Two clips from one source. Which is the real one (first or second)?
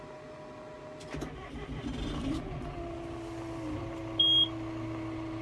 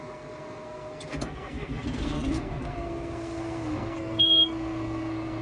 first